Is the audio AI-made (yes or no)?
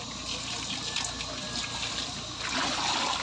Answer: no